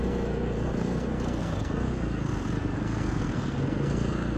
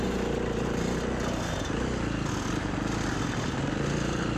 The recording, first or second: second